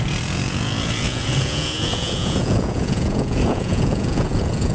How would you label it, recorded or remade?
remade